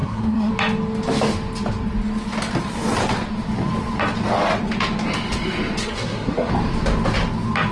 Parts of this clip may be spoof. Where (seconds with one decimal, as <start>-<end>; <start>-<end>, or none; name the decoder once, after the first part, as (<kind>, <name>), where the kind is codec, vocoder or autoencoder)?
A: 0.0-0.5 (codec, SNAC); 5.8-6.5